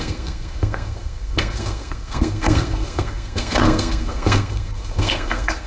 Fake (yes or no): yes